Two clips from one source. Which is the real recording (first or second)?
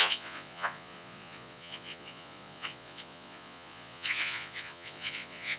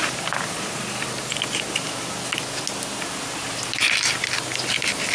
second